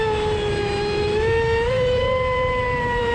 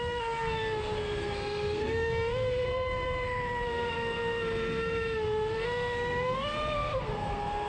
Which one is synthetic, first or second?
second